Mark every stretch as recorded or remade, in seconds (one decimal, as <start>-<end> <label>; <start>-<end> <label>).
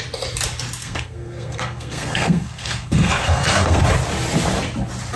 0.0-0.8 recorded; 0.8-3.8 remade; 3.8-5.2 recorded